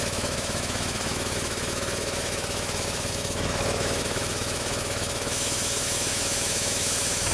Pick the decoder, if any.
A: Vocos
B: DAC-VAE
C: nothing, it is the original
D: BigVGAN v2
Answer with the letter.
B